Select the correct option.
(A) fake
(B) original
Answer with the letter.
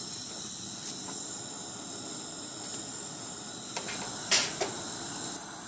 B